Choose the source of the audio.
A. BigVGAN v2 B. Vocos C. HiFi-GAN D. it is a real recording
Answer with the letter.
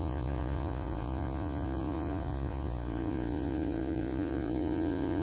B